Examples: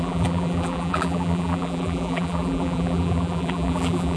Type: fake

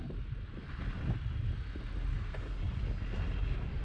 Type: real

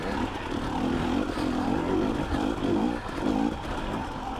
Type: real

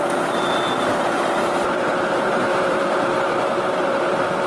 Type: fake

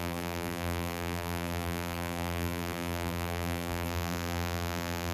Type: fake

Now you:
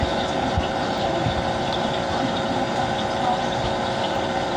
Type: fake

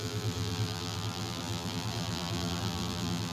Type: fake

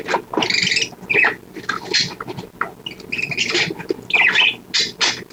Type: real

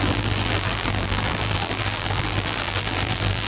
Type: fake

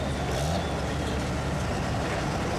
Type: real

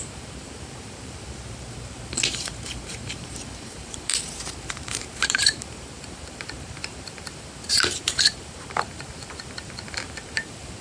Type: fake